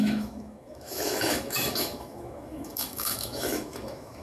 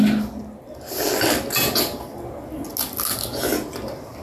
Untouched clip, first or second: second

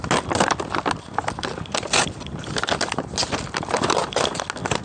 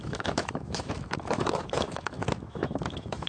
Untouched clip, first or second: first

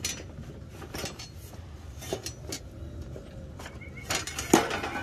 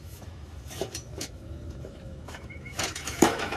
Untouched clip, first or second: first